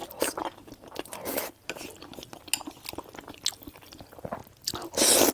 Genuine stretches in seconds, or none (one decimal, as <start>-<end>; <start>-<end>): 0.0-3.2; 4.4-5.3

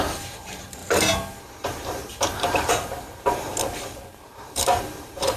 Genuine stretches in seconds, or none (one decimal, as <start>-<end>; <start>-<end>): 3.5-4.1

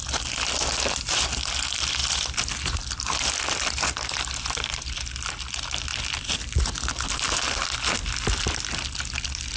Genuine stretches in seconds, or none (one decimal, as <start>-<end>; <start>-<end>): 0.0-2.0; 5.3-5.9; 6.6-8.0; 8.6-9.6

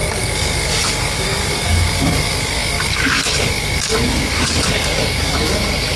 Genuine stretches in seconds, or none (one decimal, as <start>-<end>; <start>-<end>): none

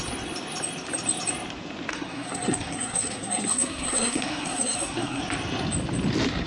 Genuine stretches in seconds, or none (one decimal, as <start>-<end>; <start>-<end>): 0.0-1.9; 5.2-6.5